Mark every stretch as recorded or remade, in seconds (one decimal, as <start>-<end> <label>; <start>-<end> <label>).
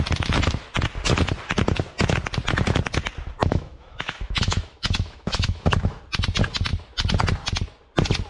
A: 0.0-3.4 recorded; 3.4-6.0 remade; 6.0-8.3 recorded